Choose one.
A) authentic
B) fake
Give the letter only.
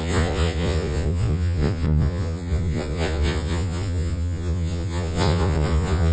B